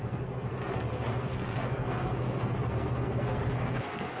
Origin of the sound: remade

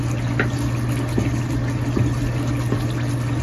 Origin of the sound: recorded